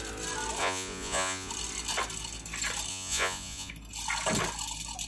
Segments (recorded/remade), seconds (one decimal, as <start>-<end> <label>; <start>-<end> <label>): 0.0-0.6 recorded; 0.6-1.5 remade; 1.5-2.9 recorded; 2.9-3.7 remade; 3.7-5.1 recorded